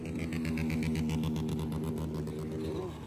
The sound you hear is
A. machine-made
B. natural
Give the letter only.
B